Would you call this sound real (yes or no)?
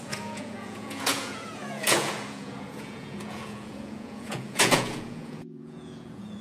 no